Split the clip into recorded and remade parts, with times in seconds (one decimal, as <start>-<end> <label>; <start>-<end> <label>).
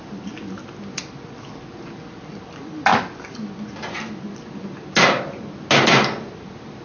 0.0-6.8 recorded